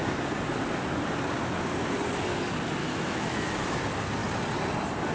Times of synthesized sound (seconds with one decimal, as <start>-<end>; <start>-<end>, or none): 2.8-3.8